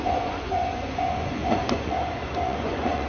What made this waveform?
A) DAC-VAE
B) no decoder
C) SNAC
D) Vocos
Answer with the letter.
D